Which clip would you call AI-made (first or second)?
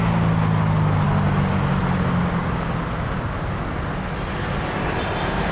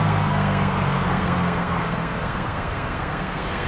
second